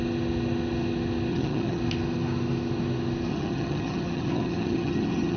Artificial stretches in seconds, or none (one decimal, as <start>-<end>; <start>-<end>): 1.3-1.8; 3.3-5.4

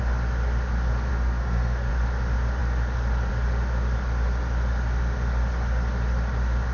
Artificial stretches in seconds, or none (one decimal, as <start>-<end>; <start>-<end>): 1.1-1.9

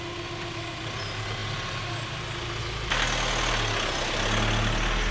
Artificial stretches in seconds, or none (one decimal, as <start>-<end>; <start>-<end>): none

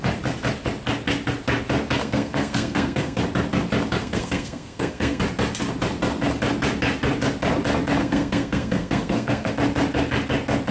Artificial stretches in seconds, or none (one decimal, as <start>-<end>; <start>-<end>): 2.0-3.2; 4.0-5.2; 8.0-9.5

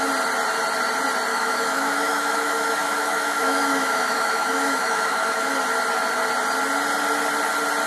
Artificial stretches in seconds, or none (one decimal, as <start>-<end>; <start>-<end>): 1.3-5.5

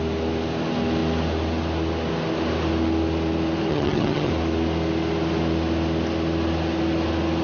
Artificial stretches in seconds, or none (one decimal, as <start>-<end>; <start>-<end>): 3.7-4.3

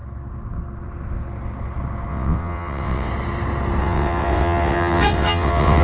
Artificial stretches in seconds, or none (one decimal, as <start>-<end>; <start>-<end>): 2.1-3.1; 3.8-5.8

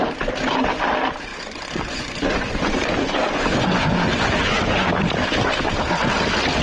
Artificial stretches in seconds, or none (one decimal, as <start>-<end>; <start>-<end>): 1.3-4.9